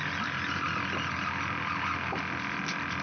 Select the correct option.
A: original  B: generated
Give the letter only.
A